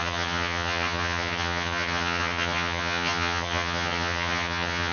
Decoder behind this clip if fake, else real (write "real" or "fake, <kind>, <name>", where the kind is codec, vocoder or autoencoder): fake, vocoder, HiFi-GAN